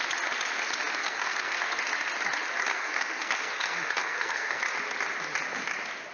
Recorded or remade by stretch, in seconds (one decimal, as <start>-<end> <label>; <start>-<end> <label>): 0.0-1.0 recorded; 1.0-1.8 remade; 1.8-2.7 recorded; 2.7-4.6 remade; 4.6-6.1 recorded